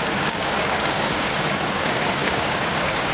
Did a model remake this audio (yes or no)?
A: yes